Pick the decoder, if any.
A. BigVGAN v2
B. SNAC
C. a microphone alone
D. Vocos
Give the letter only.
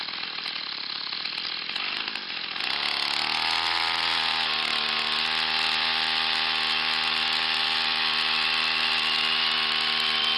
C